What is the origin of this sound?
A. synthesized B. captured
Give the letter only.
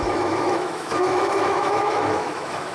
A